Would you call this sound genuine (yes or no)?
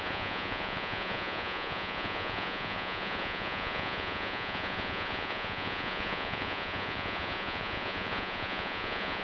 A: no